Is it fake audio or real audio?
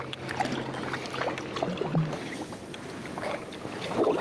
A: real